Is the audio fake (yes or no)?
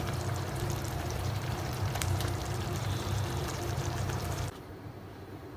yes